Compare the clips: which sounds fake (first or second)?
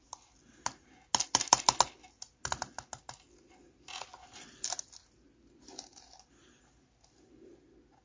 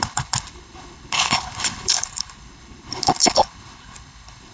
second